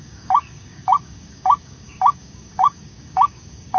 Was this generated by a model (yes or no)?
yes